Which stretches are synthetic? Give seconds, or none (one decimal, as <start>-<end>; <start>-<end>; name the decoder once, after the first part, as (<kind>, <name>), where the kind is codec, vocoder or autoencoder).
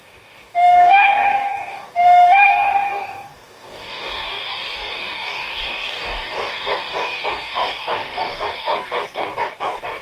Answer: 0.0-10.0 (codec, DAC)